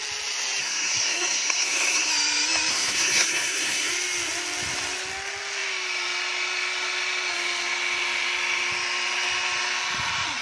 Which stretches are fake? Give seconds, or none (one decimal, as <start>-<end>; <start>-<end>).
0.6-2.1; 2.7-3.9